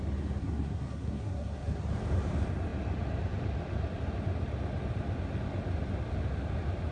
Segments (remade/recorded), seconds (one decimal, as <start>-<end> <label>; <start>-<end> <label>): 0.0-0.4 recorded; 0.4-1.8 remade; 1.8-6.9 recorded